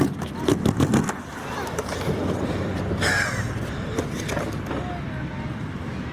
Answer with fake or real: real